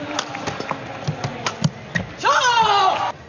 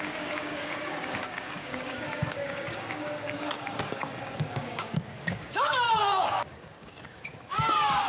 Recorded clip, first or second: first